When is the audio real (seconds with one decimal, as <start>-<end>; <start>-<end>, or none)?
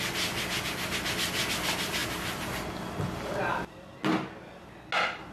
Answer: 0.0-5.3